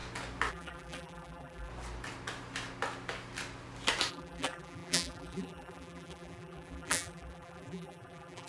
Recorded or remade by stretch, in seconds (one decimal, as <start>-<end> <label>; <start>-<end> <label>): 0.0-0.5 recorded; 0.5-1.7 remade; 1.7-4.1 recorded; 4.1-8.5 remade